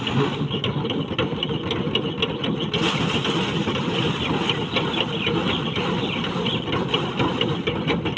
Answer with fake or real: real